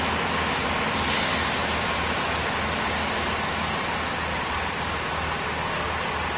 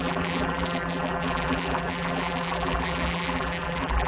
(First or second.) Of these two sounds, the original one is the first